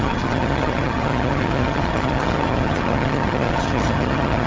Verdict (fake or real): fake